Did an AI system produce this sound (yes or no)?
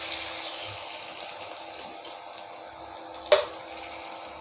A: no